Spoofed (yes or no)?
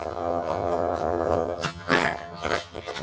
yes